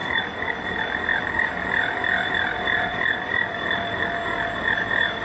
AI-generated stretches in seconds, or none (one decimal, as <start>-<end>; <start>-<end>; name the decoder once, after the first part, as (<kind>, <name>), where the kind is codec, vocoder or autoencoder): 1.1-2.3 (vocoder, BigVGAN v2); 2.9-4.0